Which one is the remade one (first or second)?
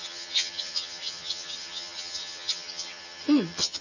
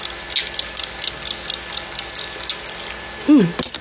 first